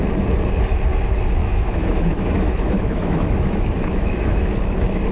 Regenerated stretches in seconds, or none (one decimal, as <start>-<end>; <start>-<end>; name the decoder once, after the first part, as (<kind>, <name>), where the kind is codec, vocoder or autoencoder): 1.4-4.5 (autoencoder, DAC-VAE)